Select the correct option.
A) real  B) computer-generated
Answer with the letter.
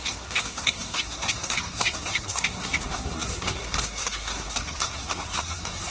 B